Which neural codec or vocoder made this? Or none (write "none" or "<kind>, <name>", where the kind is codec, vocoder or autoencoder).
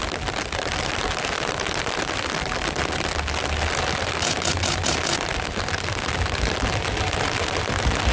none